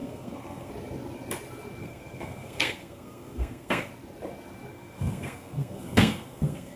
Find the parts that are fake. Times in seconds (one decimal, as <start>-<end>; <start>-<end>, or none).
0.0-0.7; 1.8-3.9; 4.7-6.8